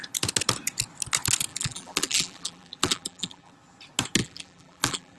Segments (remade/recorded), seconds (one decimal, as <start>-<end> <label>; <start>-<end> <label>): 0.0-1.5 recorded; 1.5-3.5 remade; 3.5-4.2 recorded; 4.2-5.2 remade

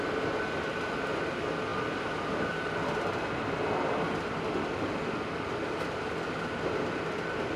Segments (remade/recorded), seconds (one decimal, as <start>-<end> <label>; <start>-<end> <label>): 0.0-7.6 recorded

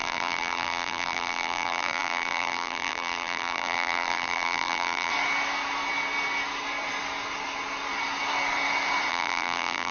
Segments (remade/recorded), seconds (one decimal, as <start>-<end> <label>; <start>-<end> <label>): 0.0-5.1 remade; 5.1-9.1 recorded; 9.1-9.9 remade

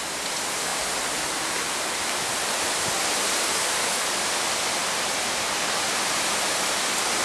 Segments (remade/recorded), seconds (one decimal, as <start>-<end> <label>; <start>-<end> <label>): 0.0-7.2 remade

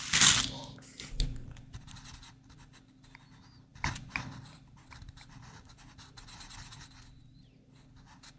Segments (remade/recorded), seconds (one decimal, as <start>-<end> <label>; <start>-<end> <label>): 0.0-3.7 recorded; 3.7-6.9 remade; 6.9-8.4 recorded

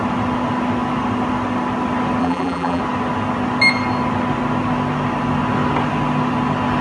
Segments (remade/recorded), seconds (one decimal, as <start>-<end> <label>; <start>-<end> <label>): 0.0-2.2 recorded; 2.2-2.8 remade; 2.8-6.8 recorded

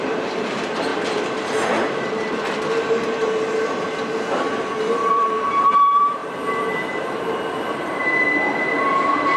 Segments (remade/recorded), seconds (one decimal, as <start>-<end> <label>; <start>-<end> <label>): 0.0-0.9 remade; 0.9-5.1 recorded; 5.1-8.0 remade; 8.0-8.9 recorded; 8.9-9.4 remade

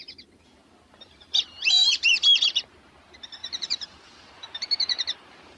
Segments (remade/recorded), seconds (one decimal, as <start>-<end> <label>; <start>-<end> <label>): 0.0-0.6 recorded; 0.6-2.6 remade; 2.6-3.4 recorded; 3.4-5.6 remade